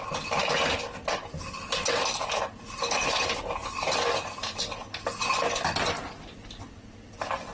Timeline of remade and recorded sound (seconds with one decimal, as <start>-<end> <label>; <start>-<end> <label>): 0.0-7.5 recorded